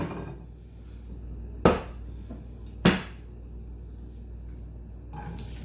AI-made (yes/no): no